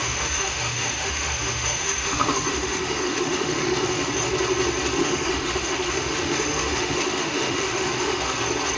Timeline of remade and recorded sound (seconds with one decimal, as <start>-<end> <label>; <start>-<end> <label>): 0.0-4.1 remade; 4.1-5.0 recorded; 5.0-8.4 remade; 8.4-8.8 recorded

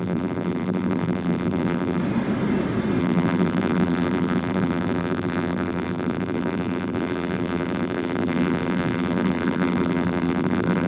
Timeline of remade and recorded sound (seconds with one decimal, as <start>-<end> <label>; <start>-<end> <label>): 0.0-2.0 remade; 2.0-3.0 recorded; 3.0-10.9 remade

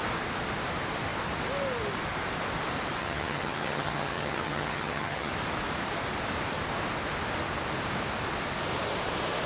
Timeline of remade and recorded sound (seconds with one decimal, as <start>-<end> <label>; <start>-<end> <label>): 0.0-3.0 recorded; 3.0-5.3 remade; 5.3-9.5 recorded

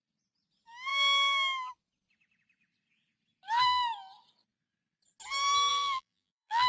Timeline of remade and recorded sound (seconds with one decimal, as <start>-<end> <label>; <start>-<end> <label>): 0.0-5.7 recorded; 5.7-6.7 remade

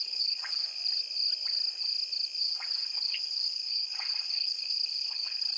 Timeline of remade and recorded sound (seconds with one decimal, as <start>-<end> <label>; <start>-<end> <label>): 0.0-0.8 remade; 0.8-2.4 recorded; 2.4-5.6 remade

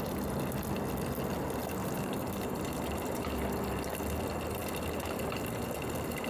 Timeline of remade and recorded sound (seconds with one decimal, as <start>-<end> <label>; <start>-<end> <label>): 0.0-1.6 recorded; 1.6-3.4 remade; 3.4-6.3 recorded

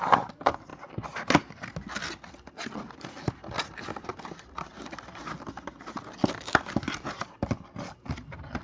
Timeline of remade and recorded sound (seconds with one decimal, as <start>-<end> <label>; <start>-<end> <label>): 0.0-0.7 remade; 0.7-3.3 recorded; 3.3-8.6 remade

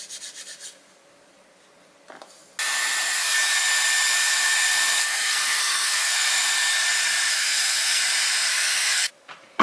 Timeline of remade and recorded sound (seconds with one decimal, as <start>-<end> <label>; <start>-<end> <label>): 0.0-5.0 recorded; 5.0-6.3 remade; 6.3-7.3 recorded; 7.3-8.0 remade; 8.0-8.5 recorded; 8.5-9.1 remade; 9.1-9.6 recorded